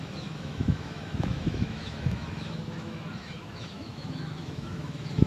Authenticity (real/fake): fake